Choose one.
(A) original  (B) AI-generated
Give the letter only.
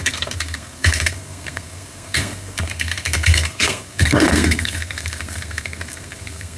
B